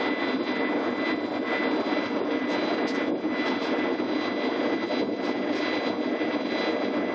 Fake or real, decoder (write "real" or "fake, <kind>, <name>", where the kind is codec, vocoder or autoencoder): real